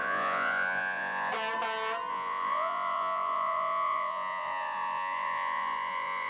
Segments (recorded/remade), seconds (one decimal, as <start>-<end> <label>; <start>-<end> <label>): 0.0-1.3 remade; 1.3-2.1 recorded; 2.1-6.3 remade